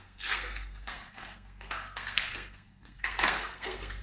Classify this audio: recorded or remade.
remade